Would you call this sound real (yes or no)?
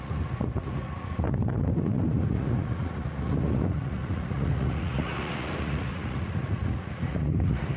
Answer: no